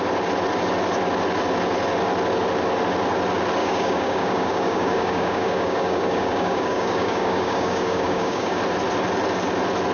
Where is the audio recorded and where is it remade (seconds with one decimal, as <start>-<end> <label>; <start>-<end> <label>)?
0.0-3.6 recorded; 3.6-8.6 remade; 8.6-9.9 recorded